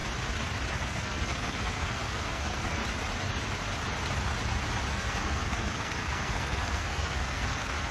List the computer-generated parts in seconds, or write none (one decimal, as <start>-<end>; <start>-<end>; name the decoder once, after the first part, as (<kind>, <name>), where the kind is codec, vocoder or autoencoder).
0.7-2.8 (codec, SNAC); 4.9-7.9

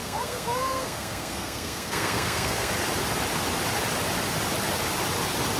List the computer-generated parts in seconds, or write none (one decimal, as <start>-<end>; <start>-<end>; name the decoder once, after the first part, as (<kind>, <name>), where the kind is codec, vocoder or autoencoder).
0.0-2.7 (codec, SNAC)

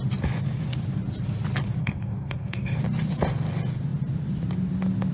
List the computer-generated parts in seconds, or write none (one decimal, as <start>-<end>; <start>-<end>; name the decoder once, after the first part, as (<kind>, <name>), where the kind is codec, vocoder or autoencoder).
1.8-2.8 (codec, SNAC)

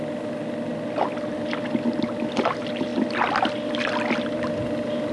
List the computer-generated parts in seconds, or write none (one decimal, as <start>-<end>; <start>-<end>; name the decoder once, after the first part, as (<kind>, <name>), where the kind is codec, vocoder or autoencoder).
none